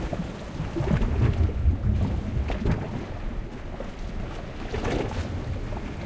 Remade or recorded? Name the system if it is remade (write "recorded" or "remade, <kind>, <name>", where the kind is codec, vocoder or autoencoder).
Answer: recorded